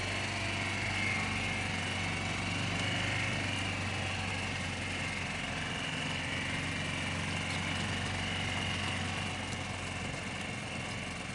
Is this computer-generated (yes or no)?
no